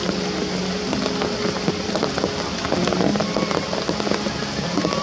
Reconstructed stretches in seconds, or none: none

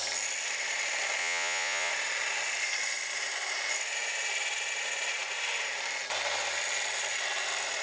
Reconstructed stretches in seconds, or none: 1.2-1.9 (vocoder, Vocos)

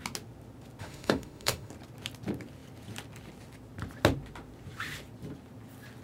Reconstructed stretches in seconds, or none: 0.8-1.7 (autoencoder, DAC-VAE)